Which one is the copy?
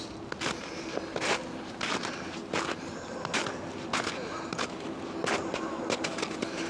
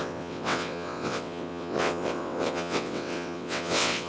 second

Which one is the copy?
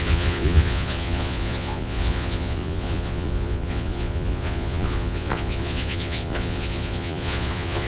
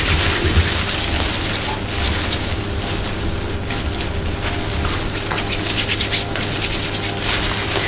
first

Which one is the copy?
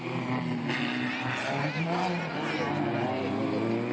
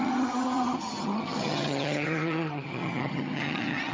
second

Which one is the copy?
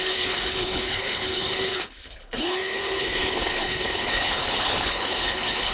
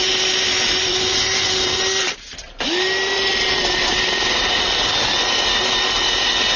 first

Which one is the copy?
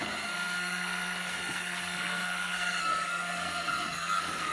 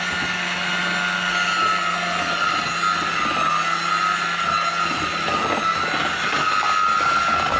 first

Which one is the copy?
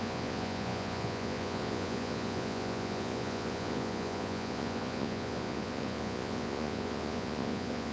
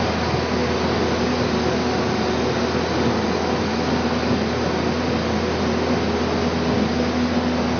first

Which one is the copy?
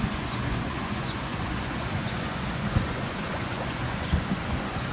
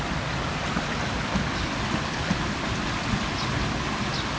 first